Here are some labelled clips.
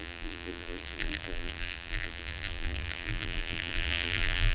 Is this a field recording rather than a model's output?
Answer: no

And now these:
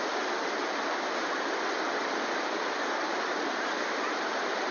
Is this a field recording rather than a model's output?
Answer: yes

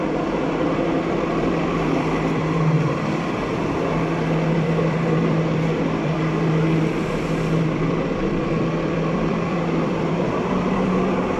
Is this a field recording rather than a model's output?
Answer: no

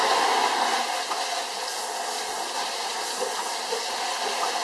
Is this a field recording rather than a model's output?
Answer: yes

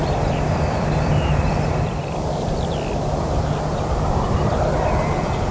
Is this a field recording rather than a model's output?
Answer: no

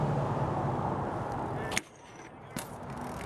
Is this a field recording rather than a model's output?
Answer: yes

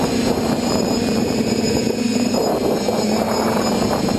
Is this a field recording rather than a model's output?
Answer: no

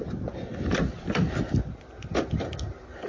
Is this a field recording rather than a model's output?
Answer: yes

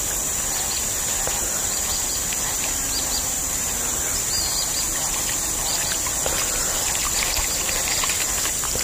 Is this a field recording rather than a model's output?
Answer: yes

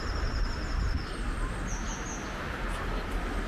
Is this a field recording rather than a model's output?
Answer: yes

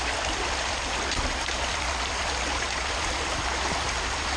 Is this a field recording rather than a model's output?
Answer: no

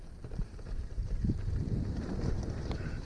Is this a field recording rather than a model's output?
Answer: no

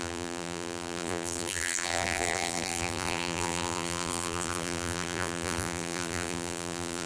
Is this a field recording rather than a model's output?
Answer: no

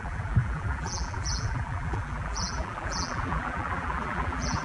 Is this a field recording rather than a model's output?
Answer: no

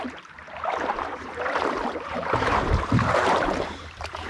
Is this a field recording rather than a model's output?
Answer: no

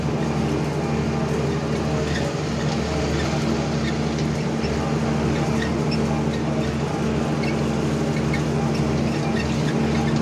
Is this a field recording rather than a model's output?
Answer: yes